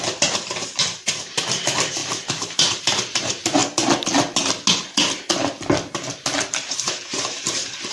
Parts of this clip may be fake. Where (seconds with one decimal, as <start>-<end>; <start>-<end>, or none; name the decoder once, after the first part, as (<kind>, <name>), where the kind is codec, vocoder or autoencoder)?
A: 0.0-3.6 (vocoder, BigVGAN v2); 6.5-7.9